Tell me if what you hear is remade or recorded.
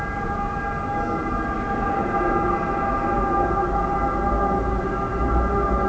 recorded